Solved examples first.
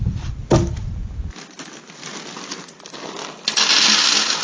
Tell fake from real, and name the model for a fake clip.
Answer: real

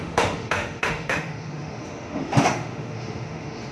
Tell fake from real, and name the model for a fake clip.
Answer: fake, autoencoder, DAC-VAE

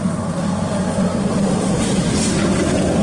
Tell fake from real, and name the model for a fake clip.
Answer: real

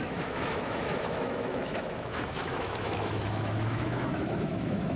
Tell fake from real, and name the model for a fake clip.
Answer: fake, autoencoder, DAC-VAE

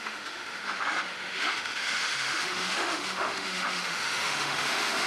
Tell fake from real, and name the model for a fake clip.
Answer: fake, autoencoder, DAC-VAE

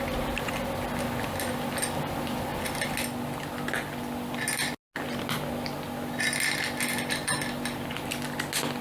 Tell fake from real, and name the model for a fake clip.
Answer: real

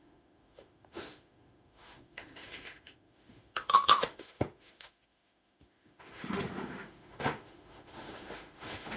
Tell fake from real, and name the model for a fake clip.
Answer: fake, autoencoder, DAC-VAE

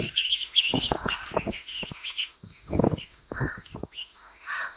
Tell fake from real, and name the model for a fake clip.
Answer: fake, autoencoder, DAC-VAE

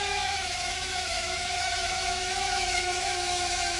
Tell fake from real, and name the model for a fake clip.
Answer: fake, autoencoder, DAC-VAE